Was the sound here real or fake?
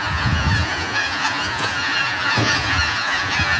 fake